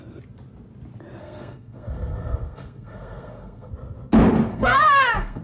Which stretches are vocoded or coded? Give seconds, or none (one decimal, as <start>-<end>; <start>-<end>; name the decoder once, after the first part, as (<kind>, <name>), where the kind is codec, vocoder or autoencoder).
1.2-3.7 (codec, SNAC); 4.5-5.4